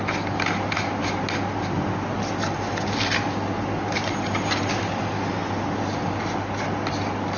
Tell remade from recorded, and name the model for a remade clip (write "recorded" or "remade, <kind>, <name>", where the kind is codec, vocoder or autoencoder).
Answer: recorded